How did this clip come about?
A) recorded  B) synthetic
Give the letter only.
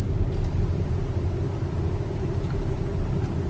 A